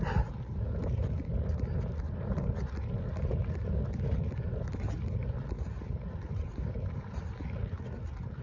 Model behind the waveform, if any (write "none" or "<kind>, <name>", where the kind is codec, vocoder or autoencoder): none